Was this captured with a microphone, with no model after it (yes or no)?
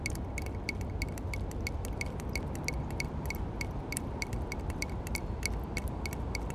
yes